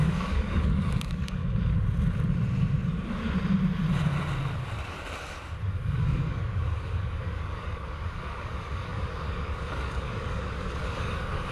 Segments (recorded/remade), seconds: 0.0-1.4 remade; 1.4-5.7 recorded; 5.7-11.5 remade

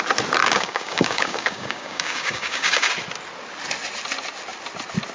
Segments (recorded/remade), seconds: 0.0-0.4 recorded; 0.4-2.9 remade; 2.9-5.1 recorded

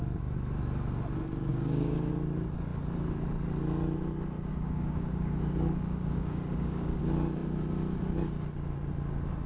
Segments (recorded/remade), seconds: 0.0-1.5 recorded; 1.5-2.1 remade; 2.1-4.5 recorded; 4.5-7.0 remade; 7.0-9.5 recorded

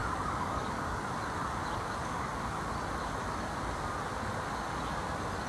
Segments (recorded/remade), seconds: 0.0-1.0 remade; 1.0-2.0 recorded; 2.0-2.6 remade; 2.6-5.5 recorded

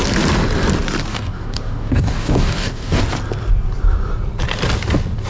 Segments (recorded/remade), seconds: 0.0-1.1 recorded; 1.1-3.0 remade; 3.0-5.3 recorded

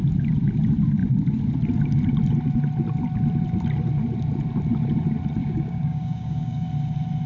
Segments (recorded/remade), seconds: 0.0-5.4 recorded; 5.4-6.7 remade; 6.7-7.3 recorded